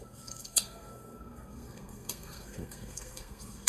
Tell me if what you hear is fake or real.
fake